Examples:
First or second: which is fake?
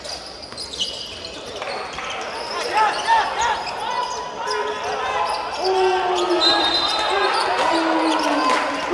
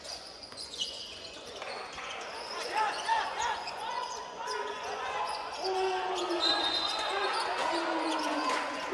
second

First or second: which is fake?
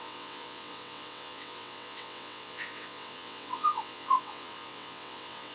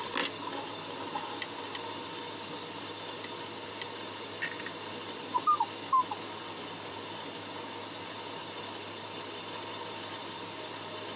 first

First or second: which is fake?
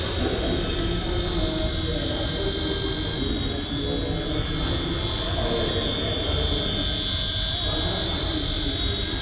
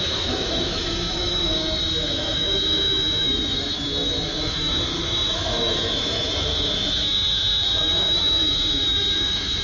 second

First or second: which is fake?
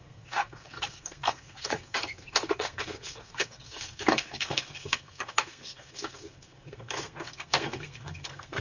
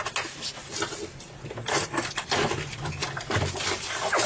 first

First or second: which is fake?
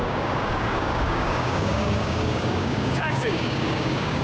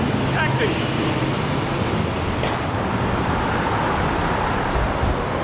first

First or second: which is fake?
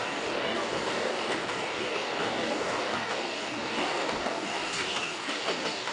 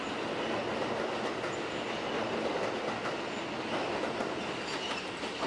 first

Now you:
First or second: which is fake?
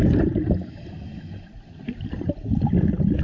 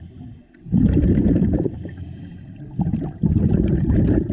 first